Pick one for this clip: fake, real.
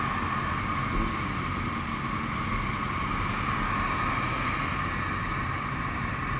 real